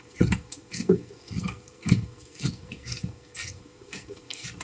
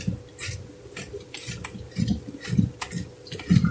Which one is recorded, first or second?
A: second